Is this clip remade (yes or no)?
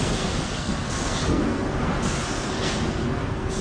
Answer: yes